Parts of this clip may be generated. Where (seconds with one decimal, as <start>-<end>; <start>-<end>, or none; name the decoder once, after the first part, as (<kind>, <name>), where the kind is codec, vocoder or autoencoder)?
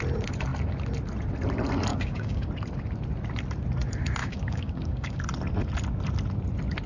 1.9-2.5 (codec, DAC); 4.2-5.2